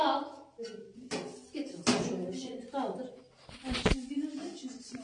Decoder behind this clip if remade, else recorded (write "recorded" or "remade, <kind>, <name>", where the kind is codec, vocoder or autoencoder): recorded